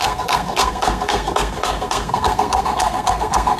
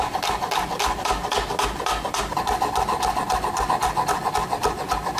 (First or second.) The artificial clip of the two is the first